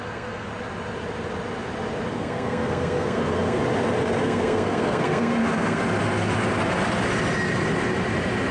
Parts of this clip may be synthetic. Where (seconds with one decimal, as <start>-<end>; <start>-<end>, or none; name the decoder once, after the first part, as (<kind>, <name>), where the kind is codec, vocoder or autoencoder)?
0.0-0.5 (codec, SNAC); 2.1-3.6; 4.2-5.8